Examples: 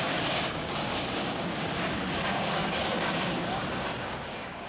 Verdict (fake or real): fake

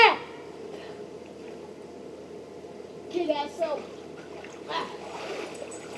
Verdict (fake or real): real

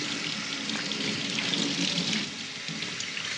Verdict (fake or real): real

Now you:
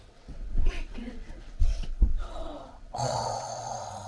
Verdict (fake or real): fake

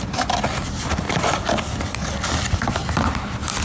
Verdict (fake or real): real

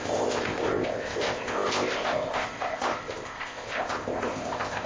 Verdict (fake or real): fake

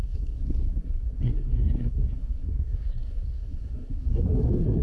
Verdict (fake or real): fake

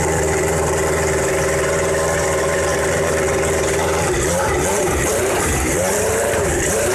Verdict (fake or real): fake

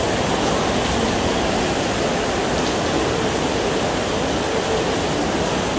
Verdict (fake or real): real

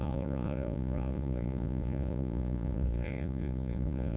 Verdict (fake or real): fake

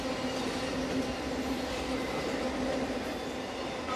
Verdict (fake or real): real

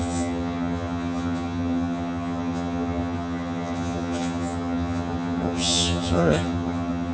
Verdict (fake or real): fake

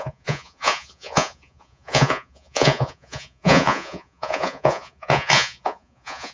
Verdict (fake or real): fake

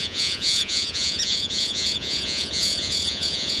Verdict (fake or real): fake